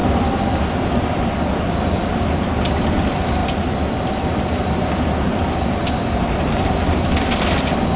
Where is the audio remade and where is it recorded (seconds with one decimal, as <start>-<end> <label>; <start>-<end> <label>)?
0.0-2.1 remade; 2.1-3.4 recorded; 3.4-4.9 remade; 4.9-8.0 recorded